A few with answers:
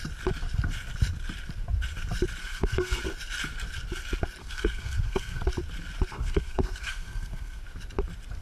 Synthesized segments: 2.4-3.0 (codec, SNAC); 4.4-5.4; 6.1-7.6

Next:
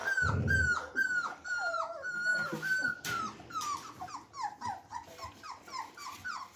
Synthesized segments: none

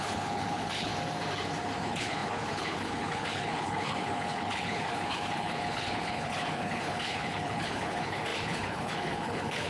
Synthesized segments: 0.0-0.9 (codec, HILCodec); 1.8-9.7

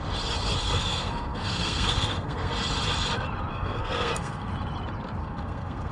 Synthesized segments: 0.6-2.5 (codec, SNAC); 3.5-4.5; 5.2-5.9

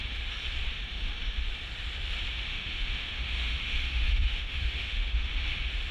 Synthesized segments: 2.5-5.3 (autoencoder, DAC-VAE)

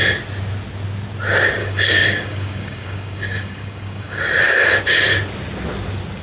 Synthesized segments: 1.6-4.2 (codec, DAC)